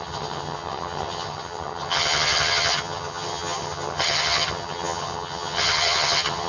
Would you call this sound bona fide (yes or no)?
no